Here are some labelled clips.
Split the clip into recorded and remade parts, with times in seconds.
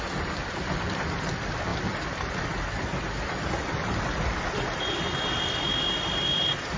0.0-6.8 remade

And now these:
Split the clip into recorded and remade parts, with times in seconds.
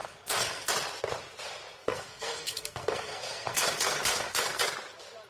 0.0-0.7 remade; 0.7-1.8 recorded; 1.8-4.6 remade; 4.6-5.3 recorded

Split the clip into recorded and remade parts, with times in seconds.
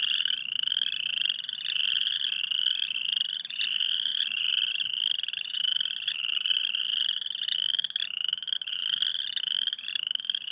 0.0-4.1 recorded; 4.1-8.9 remade; 8.9-10.5 recorded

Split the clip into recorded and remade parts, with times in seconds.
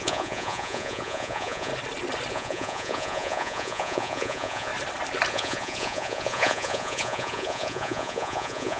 0.0-1.7 remade; 1.7-2.3 recorded; 2.3-4.7 remade; 4.7-5.3 recorded; 5.3-8.8 remade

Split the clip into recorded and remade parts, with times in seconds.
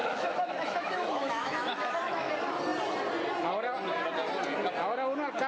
0.0-2.3 remade; 2.3-5.5 recorded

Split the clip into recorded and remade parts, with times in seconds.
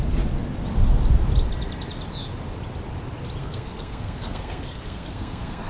0.0-3.4 recorded; 3.4-5.7 remade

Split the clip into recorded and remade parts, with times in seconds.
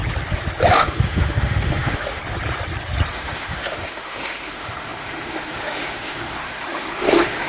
0.0-0.7 recorded; 0.7-2.2 remade; 2.2-3.1 recorded; 3.1-7.5 remade